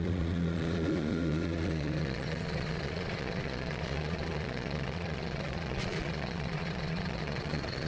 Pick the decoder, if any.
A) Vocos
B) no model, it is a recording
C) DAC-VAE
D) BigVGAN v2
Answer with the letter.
A